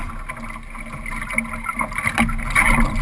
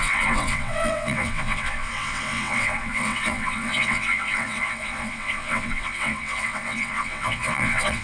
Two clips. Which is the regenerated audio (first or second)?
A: second